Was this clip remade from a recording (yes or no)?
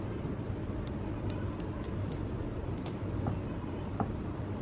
no